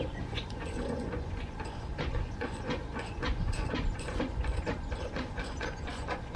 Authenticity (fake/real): fake